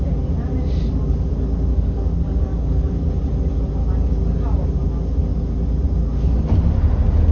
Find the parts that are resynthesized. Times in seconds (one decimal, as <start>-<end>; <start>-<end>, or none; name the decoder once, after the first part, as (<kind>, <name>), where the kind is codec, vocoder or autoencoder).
1.7-3.1 (codec, DAC)